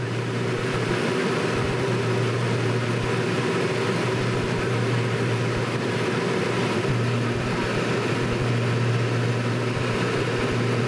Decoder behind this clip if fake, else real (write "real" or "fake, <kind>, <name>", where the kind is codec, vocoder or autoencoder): fake, vocoder, BigVGAN v2